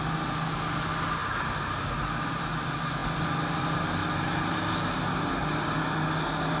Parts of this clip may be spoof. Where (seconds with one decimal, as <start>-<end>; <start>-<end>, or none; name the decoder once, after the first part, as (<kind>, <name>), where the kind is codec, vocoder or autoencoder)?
none